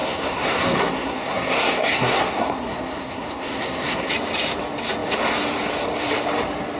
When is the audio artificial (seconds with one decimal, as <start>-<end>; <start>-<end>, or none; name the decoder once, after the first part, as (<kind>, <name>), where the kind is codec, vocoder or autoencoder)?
0.0-4.1 (codec, SNAC)